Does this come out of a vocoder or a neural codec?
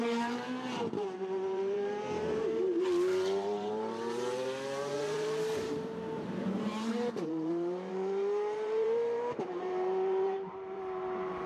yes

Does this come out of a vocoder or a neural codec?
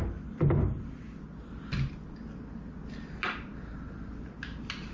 no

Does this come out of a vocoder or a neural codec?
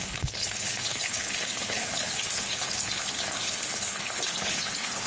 yes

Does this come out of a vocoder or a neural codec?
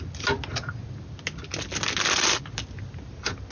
no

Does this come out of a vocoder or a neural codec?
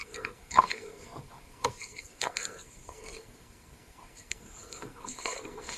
yes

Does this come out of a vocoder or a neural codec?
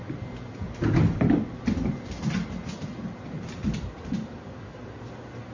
no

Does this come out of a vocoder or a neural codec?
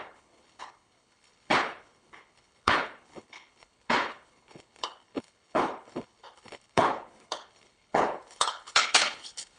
yes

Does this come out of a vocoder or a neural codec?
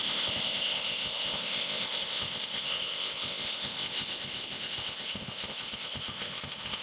yes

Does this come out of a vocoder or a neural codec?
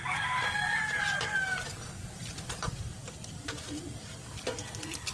no